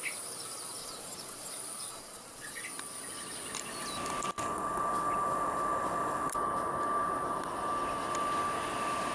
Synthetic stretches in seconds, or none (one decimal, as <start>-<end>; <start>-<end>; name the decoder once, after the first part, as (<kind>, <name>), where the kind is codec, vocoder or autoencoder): 0.8-1.5 (vocoder, Vocos); 1.9-2.6